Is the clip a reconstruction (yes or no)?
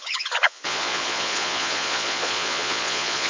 yes